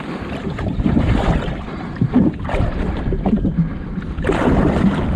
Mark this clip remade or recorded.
remade